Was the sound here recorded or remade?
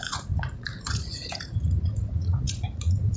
remade